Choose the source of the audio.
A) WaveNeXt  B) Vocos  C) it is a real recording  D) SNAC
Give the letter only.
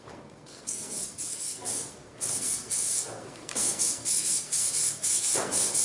D